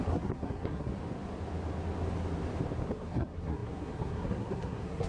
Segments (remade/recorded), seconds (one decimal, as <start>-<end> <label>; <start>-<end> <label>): 0.0-0.9 remade; 0.9-2.9 recorded; 2.9-5.1 remade